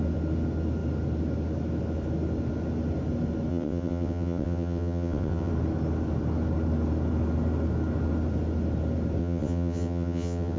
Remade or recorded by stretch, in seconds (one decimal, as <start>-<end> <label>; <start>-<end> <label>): 0.0-3.5 recorded; 3.5-5.5 remade; 5.5-9.2 recorded; 9.2-10.6 remade